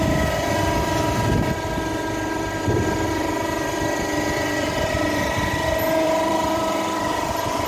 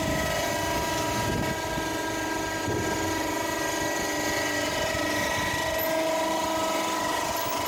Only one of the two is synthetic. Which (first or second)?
first